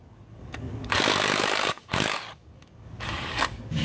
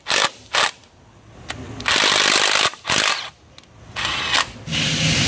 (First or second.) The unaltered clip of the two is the second